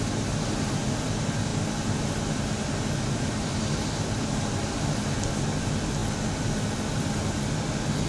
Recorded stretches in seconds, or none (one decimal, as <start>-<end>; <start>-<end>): 0.0-8.1